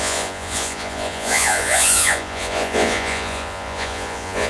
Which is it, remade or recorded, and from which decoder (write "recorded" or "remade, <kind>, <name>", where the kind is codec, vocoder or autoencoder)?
remade, vocoder, Vocos